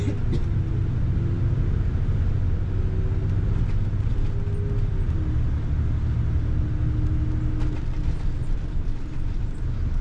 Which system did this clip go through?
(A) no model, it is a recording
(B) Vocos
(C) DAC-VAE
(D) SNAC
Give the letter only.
A